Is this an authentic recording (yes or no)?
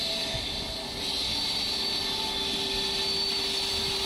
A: yes